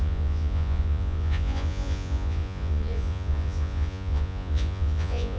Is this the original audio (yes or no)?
no